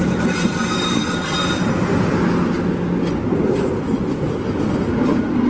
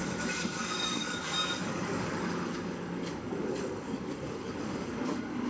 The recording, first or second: first